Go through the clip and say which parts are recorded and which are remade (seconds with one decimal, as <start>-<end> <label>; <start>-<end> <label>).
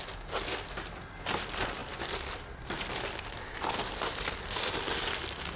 0.0-5.6 recorded